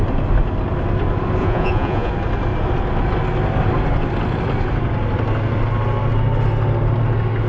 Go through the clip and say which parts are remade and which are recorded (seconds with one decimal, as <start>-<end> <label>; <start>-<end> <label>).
0.0-1.4 recorded; 1.4-2.1 remade; 2.1-7.5 recorded